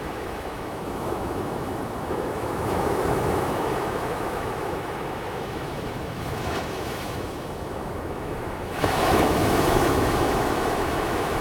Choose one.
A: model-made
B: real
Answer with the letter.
A